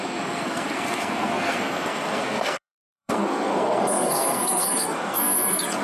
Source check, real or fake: fake